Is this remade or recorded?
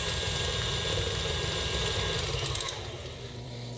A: remade